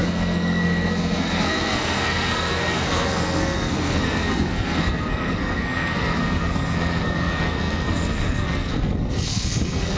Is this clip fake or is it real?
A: fake